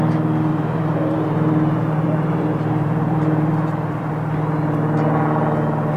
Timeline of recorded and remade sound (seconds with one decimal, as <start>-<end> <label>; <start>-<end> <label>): 0.0-0.5 recorded; 0.5-4.1 remade; 4.1-6.0 recorded